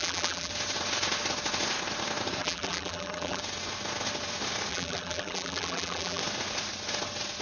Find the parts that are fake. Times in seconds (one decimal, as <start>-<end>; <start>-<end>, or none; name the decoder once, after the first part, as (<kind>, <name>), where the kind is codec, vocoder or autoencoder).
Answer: 0.0-0.5 (vocoder, BigVGAN v2); 2.4-3.4; 4.7-6.2